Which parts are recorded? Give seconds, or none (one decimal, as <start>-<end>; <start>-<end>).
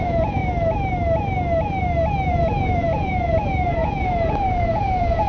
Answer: 0.4-2.3